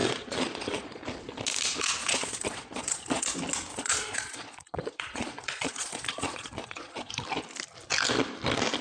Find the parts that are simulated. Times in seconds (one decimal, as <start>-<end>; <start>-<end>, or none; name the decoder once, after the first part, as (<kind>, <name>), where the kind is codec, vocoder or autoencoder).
0.0-1.0 (vocoder, Vocos); 2.0-3.3; 3.7-7.1